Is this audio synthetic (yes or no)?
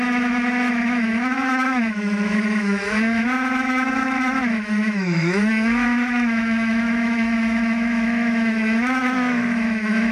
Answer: yes